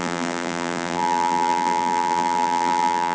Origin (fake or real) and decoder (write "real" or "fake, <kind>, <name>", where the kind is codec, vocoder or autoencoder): fake, vocoder, BigVGAN v2